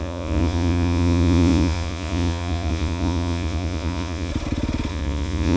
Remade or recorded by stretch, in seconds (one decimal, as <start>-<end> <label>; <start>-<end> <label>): 0.0-4.3 remade; 4.3-4.9 recorded; 4.9-5.6 remade